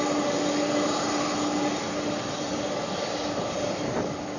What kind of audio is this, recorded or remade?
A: recorded